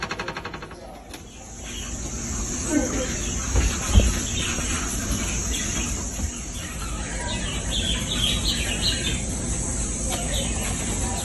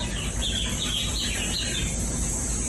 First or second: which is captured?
second